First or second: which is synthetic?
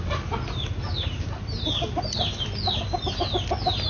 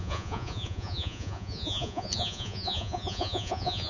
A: second